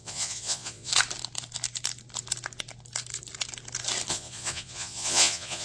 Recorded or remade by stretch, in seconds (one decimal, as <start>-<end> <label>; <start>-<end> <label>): 0.0-0.9 remade; 0.9-4.1 recorded; 4.1-5.6 remade